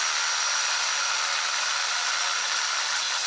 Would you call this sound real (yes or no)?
yes